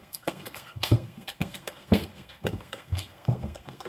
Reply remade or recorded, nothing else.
remade